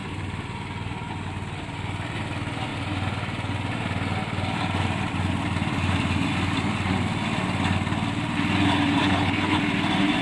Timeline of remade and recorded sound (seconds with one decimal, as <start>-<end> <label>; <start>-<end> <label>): 0.0-9.0 recorded; 9.0-9.6 remade; 9.6-10.2 recorded